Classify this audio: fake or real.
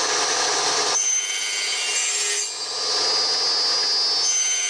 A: real